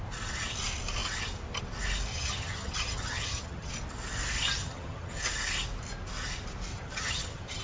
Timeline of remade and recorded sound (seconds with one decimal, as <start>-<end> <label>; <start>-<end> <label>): 0.0-2.1 recorded; 2.1-3.7 remade; 3.7-4.6 recorded; 4.6-5.2 remade; 5.2-6.7 recorded; 6.7-7.6 remade